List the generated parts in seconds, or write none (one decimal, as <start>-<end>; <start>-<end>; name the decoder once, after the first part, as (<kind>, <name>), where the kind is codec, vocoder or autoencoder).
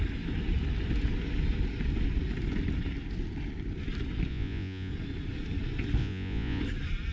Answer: 4.3-4.9 (vocoder, Vocos); 6.0-6.6